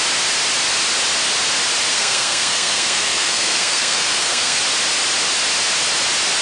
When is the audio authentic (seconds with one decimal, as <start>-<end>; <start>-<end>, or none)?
0.0-1.9; 4.6-6.4